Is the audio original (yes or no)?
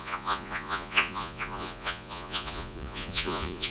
no